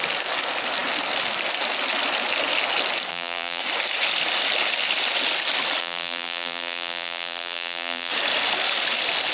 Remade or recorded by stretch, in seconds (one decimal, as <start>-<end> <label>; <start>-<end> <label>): 0.0-3.1 recorded; 3.1-3.6 remade; 3.6-5.8 recorded; 5.8-8.1 remade; 8.1-9.3 recorded